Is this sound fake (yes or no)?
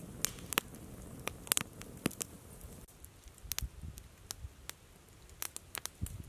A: no